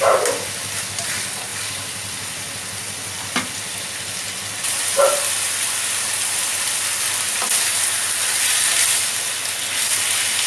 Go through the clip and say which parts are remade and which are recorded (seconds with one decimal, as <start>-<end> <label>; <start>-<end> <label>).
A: 0.0-10.5 recorded